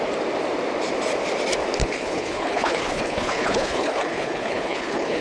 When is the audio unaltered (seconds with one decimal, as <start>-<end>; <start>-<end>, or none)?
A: 0.0-1.8